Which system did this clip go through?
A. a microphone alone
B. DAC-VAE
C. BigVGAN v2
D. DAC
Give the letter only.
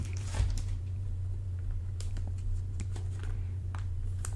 C